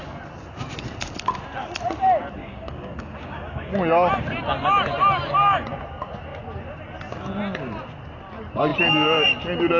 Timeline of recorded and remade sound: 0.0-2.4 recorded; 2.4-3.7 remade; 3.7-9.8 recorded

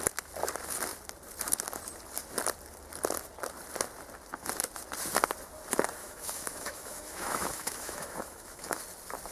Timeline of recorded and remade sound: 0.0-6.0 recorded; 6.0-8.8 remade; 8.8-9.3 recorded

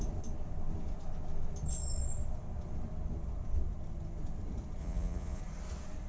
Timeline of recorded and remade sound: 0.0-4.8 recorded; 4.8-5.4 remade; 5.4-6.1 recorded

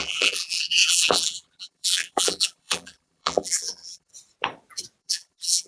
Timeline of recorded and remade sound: 0.0-4.1 remade; 4.1-5.0 recorded; 5.0-5.7 remade

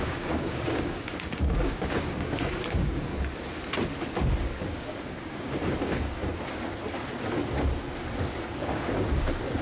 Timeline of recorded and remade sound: 0.0-3.1 remade; 3.1-4.2 recorded; 4.2-6.2 remade; 6.2-8.2 recorded; 8.2-9.6 remade